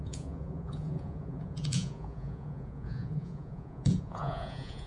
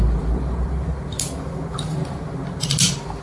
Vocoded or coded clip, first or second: first